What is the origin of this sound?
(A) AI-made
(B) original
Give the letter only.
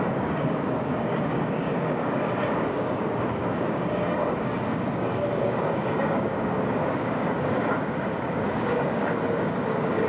A